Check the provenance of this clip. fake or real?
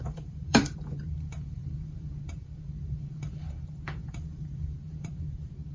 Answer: fake